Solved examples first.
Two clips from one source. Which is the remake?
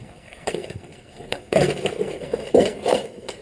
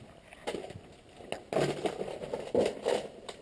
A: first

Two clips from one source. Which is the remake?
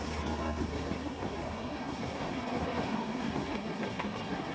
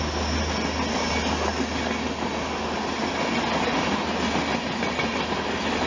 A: first